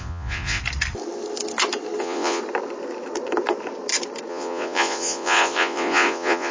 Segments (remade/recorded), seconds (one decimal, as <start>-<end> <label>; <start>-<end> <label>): 0.0-0.6 remade; 0.6-2.0 recorded; 2.0-2.4 remade; 2.4-4.3 recorded; 4.3-6.5 remade